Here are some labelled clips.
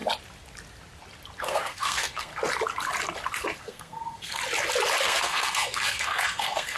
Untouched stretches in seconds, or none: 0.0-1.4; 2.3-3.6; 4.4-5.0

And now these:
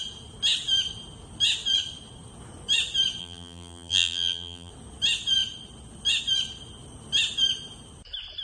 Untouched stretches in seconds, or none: 0.0-3.2; 4.7-8.4